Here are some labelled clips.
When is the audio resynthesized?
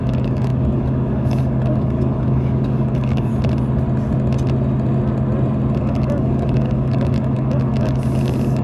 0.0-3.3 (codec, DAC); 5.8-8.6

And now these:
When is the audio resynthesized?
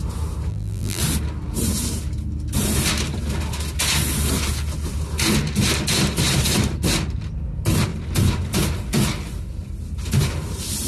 0.5-1.0 (vocoder, BigVGAN v2)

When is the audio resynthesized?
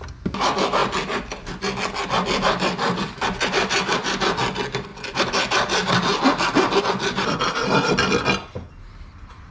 none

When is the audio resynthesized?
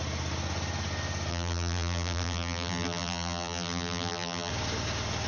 1.3-4.5 (vocoder, BigVGAN v2)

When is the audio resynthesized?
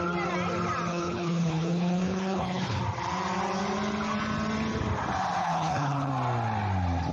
0.9-2.8 (codec, HILCodec); 5.4-6.1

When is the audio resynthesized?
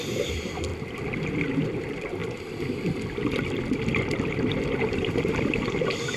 0.0-0.7 (vocoder, BigVGAN v2); 1.6-2.2; 3.9-6.2